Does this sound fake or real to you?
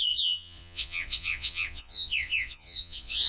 fake